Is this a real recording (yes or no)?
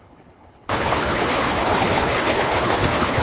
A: no